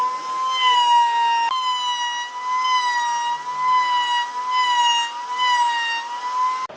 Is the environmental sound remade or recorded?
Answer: recorded